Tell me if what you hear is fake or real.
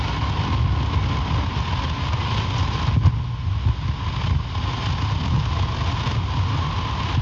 real